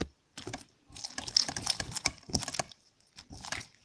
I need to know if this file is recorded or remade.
remade